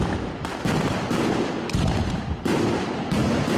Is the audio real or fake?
real